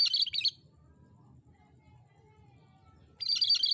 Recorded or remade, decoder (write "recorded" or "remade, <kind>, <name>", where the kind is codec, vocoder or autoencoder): recorded